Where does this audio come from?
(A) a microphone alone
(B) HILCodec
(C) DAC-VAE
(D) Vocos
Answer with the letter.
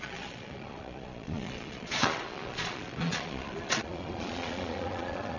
D